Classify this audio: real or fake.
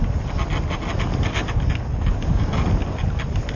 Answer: real